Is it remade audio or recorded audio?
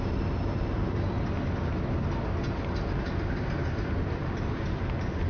recorded